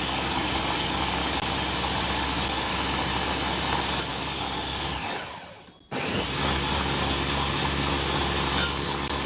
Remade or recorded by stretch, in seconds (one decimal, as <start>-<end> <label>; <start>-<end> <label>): 0.0-1.2 remade; 1.2-2.1 recorded; 2.1-2.7 remade; 2.7-4.1 recorded; 4.1-4.9 remade; 4.9-8.5 recorded; 8.5-9.3 remade